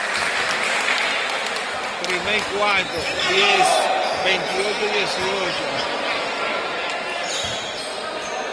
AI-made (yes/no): no